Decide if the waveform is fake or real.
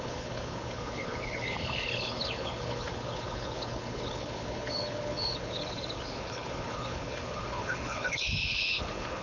fake